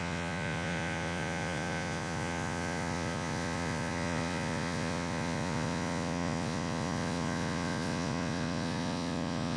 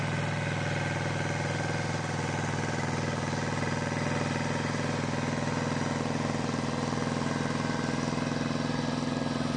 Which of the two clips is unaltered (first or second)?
second